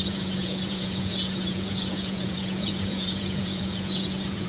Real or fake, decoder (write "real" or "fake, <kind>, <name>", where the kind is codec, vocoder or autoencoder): fake, vocoder, Vocos